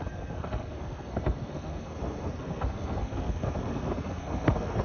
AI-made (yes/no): yes